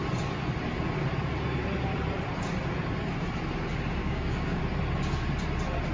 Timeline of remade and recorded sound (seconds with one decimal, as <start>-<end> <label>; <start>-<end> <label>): 0.0-4.0 recorded; 4.0-4.6 remade; 4.6-5.9 recorded